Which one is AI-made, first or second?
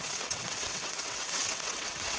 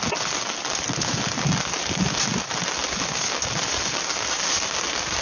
first